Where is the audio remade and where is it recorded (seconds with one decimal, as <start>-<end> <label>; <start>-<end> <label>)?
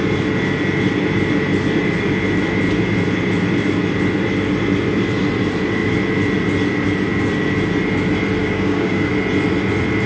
0.0-8.4 recorded; 8.4-9.1 remade; 9.1-10.1 recorded